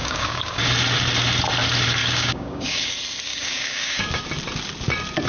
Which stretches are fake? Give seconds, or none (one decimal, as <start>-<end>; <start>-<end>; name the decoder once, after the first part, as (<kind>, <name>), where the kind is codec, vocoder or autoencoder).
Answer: 0.0-0.6 (codec, DAC); 2.0-2.9; 3.3-4.2